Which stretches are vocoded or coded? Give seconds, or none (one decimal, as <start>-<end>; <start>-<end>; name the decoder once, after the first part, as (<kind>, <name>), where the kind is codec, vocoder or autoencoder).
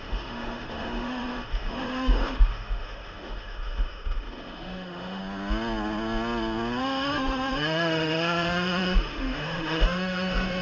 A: 0.0-5.2 (autoencoder, DAC-VAE); 6.8-10.6